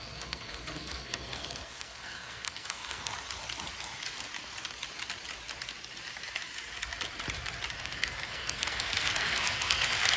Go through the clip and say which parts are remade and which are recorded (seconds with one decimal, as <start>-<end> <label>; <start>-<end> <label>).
0.0-3.1 remade; 3.1-7.8 recorded; 7.8-10.2 remade